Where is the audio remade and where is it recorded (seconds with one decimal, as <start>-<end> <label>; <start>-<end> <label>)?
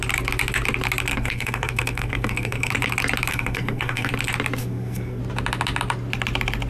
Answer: 0.0-1.1 recorded; 1.1-2.7 remade; 2.7-3.3 recorded; 3.3-4.1 remade; 4.1-4.6 recorded; 4.6-5.2 remade; 5.2-6.7 recorded